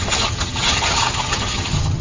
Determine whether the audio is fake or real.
fake